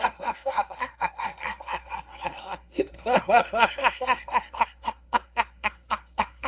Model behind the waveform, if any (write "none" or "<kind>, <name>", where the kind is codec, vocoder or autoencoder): codec, SNAC